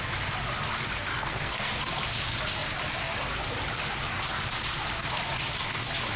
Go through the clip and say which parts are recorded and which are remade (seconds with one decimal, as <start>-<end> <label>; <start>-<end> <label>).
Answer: 0.0-1.1 recorded; 1.1-1.7 remade; 1.7-6.2 recorded